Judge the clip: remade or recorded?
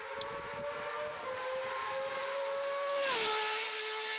recorded